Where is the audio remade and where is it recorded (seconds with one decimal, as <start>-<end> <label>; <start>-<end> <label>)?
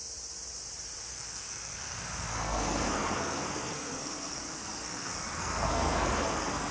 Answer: 0.0-1.1 recorded; 1.1-6.7 remade